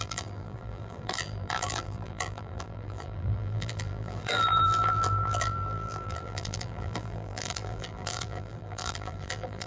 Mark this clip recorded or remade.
remade